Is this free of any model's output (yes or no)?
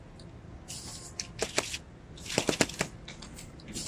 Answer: yes